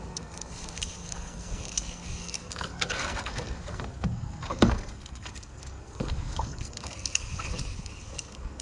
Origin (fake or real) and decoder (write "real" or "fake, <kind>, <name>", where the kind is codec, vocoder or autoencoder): fake, codec, SNAC